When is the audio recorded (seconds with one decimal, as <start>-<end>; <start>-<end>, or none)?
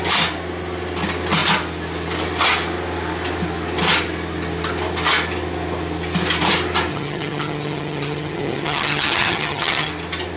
0.0-6.9; 9.9-10.4